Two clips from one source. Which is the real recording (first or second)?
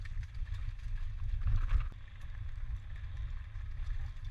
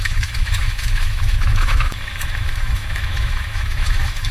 first